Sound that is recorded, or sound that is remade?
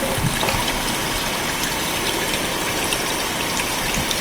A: recorded